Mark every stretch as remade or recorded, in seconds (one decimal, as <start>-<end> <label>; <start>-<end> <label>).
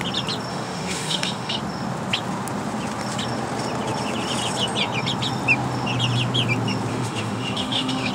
0.0-0.5 recorded; 0.5-1.6 remade; 1.6-6.9 recorded; 6.9-8.1 remade